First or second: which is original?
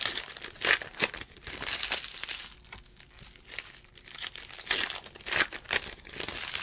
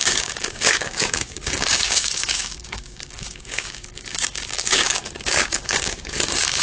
first